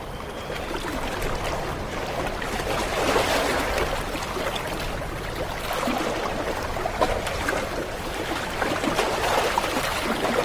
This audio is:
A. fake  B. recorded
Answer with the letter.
B